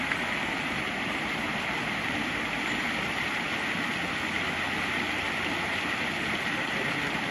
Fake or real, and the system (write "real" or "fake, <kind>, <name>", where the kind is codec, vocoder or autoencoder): real